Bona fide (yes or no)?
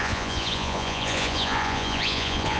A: no